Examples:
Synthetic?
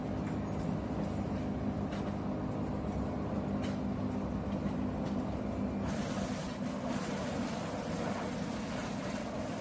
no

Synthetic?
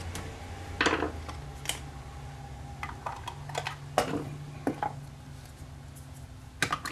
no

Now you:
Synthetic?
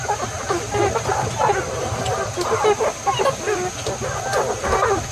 no